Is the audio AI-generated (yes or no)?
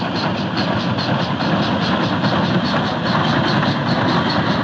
no